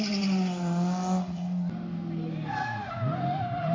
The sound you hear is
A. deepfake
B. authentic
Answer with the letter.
B